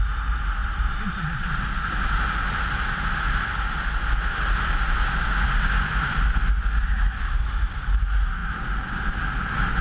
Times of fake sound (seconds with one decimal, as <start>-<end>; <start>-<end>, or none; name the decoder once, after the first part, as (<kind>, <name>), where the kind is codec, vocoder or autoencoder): none